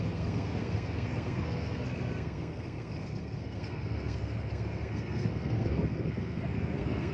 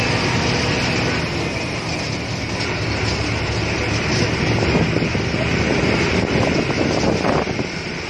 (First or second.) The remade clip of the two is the first